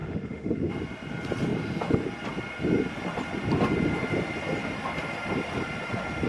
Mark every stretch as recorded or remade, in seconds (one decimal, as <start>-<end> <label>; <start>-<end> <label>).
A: 0.0-0.7 remade; 0.7-6.3 recorded